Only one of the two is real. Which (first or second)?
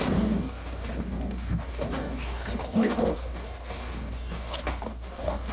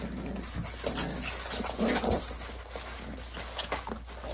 second